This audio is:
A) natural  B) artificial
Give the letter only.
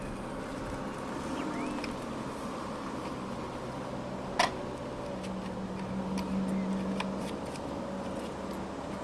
A